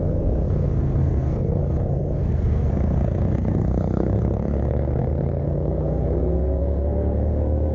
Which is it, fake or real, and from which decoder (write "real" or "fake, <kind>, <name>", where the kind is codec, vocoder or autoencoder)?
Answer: fake, codec, SNAC